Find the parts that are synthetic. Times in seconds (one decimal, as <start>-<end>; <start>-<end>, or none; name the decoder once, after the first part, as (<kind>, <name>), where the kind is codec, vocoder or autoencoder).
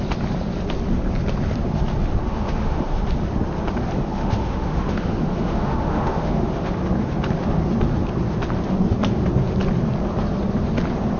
2.2-3.0 (autoencoder, DAC-VAE); 4.2-6.7